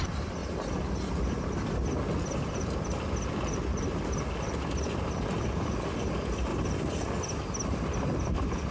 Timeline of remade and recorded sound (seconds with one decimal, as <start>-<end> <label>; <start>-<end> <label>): 0.0-8.7 recorded